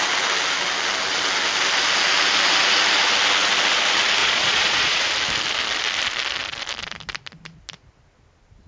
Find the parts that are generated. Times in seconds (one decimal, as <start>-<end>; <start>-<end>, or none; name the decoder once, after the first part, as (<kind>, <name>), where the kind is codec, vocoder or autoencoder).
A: 4.2-5.1 (vocoder, Vocos)